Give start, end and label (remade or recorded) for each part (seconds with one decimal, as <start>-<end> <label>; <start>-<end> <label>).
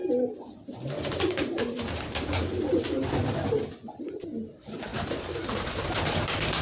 0.0-4.0 recorded; 4.0-6.6 remade